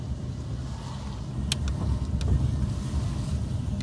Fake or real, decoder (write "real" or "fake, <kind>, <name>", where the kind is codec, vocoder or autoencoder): real